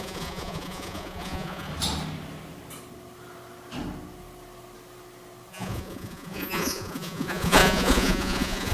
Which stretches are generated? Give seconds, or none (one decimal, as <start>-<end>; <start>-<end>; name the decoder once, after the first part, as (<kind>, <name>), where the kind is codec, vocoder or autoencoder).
0.0-1.7 (vocoder, Vocos); 5.5-8.7